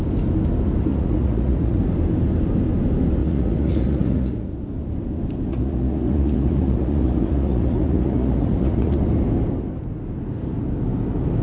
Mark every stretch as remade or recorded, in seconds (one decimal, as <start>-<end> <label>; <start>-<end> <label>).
0.0-0.9 recorded; 0.9-1.8 remade; 1.8-3.2 recorded; 3.2-4.5 remade; 4.5-5.5 recorded; 5.5-9.0 remade; 9.0-11.4 recorded